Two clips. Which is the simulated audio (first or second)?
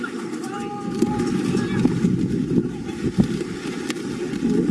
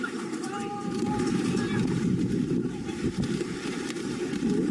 second